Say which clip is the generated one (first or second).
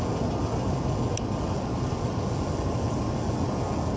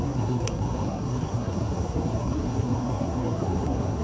second